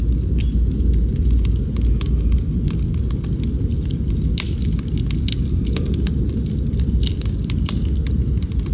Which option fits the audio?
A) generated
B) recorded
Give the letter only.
B